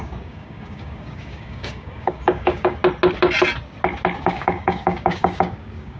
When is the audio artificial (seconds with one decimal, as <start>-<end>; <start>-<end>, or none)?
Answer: 0.0-2.8; 4.2-6.0